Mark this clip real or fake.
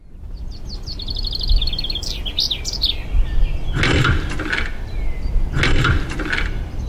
real